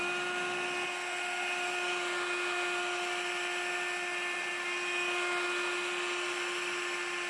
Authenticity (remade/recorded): recorded